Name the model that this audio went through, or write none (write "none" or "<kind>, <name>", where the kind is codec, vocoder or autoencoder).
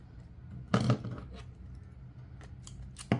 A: none